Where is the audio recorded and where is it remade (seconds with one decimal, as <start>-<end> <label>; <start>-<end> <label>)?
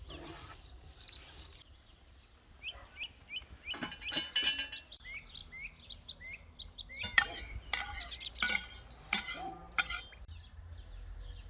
0.0-11.5 recorded